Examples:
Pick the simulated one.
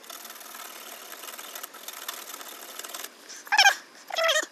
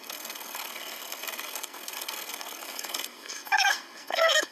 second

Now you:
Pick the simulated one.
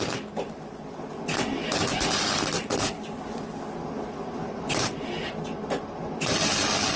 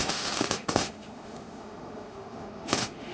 second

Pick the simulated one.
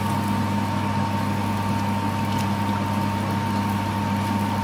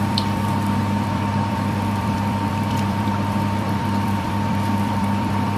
second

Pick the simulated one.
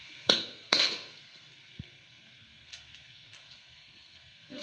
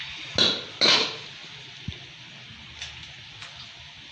first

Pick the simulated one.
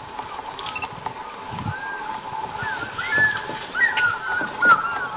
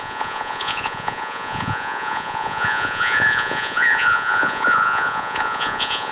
second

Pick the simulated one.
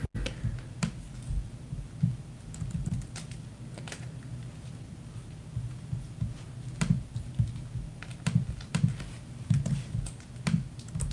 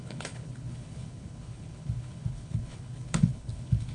second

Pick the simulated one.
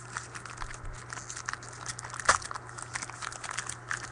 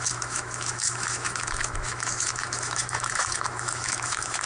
second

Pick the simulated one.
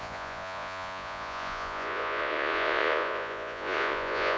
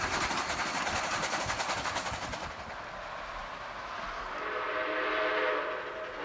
first